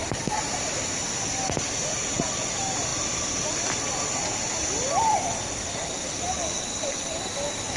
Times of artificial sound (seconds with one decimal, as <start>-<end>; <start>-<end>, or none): none